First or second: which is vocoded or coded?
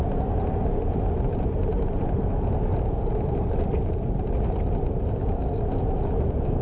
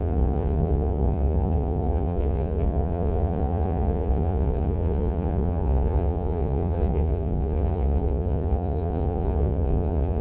second